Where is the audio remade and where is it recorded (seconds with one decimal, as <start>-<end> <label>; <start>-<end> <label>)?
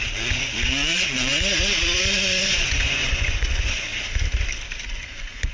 0.0-1.3 remade; 1.3-2.0 recorded; 2.0-3.9 remade; 3.9-4.9 recorded; 4.9-5.5 remade